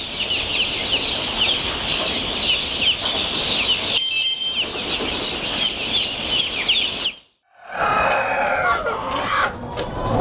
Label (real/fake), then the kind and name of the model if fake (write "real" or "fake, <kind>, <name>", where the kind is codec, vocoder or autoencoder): real